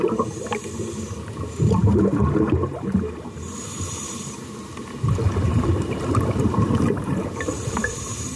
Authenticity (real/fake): fake